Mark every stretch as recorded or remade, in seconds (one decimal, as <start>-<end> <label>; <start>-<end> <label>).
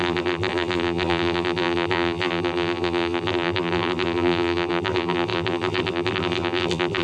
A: 0.0-7.0 remade